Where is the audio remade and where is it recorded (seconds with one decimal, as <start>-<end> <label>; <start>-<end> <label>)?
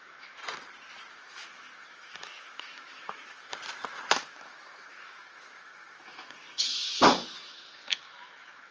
0.0-0.4 remade; 0.4-1.1 recorded; 1.1-3.5 remade; 3.5-4.1 recorded; 4.1-8.7 remade